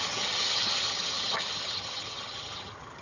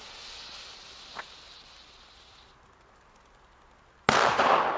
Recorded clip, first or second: second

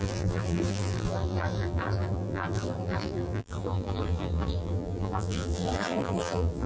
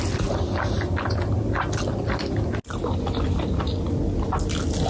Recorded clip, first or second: second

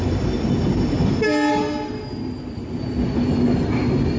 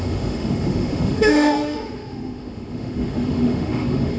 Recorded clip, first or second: first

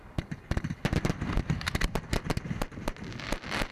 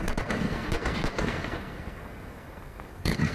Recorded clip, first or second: first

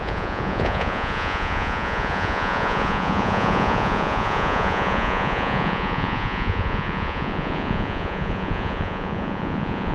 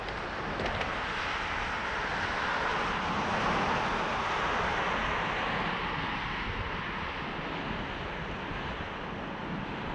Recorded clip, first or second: second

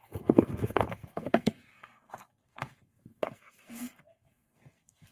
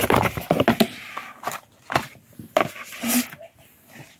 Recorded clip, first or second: second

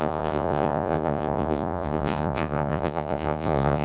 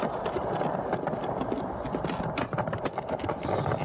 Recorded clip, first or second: second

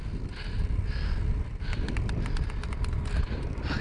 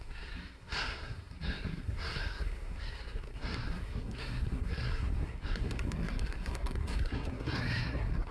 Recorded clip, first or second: first